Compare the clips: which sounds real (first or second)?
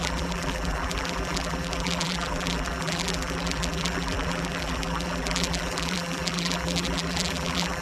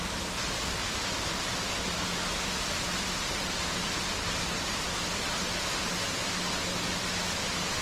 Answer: second